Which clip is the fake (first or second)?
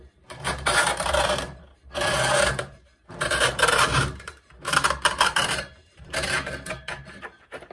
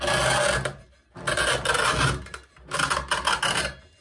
first